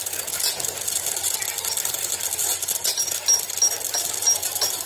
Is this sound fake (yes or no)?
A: no